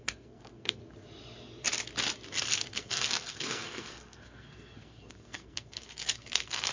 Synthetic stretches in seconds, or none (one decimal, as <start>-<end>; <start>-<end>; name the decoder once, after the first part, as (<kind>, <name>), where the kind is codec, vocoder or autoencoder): 0.0-0.8 (codec, SNAC); 2.5-6.7

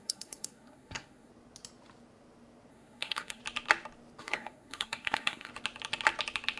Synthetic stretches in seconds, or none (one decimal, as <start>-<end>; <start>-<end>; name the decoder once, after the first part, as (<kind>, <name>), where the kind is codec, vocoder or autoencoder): 0.0-1.3 (codec, SNAC); 2.7-3.4; 4.2-5.5

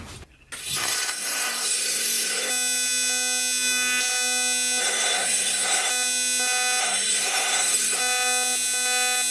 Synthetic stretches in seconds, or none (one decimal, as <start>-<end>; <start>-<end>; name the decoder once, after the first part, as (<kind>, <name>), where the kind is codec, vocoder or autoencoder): 0.6-2.5 (codec, SNAC); 4.8-5.9; 6.8-8.0

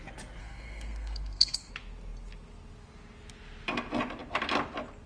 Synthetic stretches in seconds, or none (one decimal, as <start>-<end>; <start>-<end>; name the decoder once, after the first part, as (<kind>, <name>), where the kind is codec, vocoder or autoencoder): 0.4-1.7 (codec, SNAC)

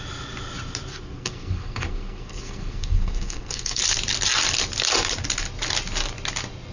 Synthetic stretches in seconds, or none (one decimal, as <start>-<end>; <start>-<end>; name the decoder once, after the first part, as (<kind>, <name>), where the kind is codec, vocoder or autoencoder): 0.9-3.8 (codec, SNAC)

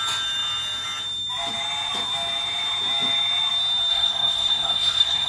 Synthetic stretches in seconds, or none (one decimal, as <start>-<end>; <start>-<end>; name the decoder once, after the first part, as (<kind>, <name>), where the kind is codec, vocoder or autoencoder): 3.9-5.3 (codec, SNAC)